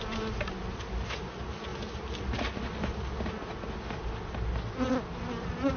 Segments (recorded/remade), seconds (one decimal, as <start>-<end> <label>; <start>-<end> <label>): 0.0-5.8 recorded